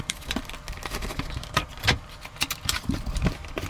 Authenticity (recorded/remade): remade